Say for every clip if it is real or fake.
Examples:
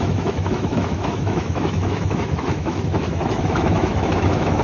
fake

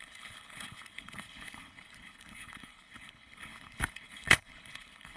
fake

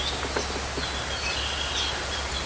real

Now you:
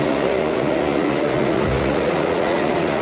fake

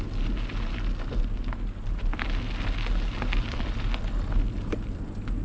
real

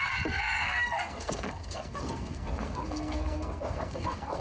fake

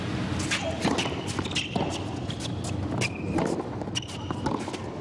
real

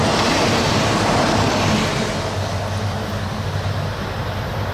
real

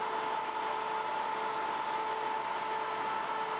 real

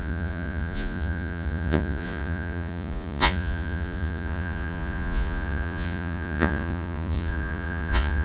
fake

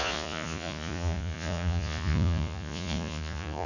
fake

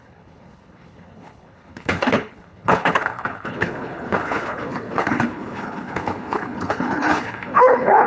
fake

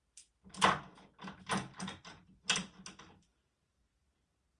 real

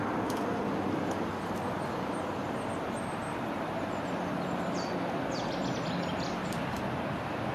real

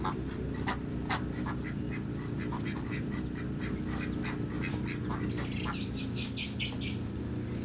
real